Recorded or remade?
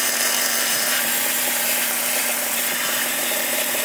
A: remade